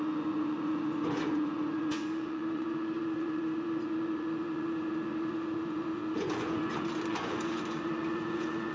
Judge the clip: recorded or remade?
remade